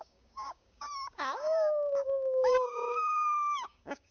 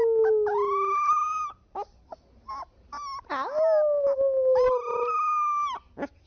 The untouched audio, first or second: second